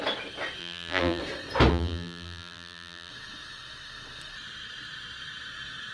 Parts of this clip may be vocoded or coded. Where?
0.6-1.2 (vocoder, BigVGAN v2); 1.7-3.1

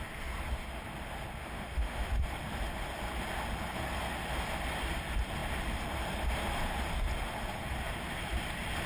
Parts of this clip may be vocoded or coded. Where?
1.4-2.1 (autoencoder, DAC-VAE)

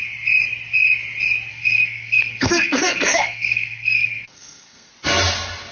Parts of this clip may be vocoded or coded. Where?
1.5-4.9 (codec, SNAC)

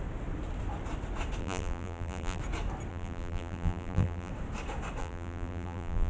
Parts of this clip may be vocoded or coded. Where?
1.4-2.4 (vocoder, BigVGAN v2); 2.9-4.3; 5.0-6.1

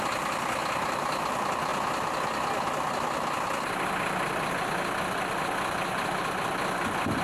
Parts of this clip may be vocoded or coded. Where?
none